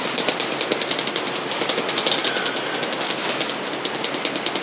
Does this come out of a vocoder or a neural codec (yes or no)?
no